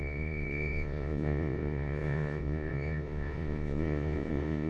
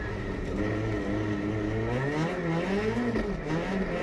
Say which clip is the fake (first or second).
first